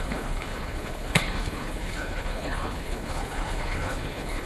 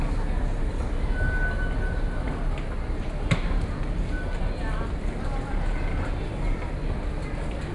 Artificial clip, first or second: first